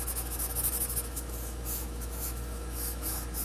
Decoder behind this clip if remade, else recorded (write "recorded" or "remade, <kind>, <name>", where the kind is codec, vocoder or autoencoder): remade, autoencoder, DAC-VAE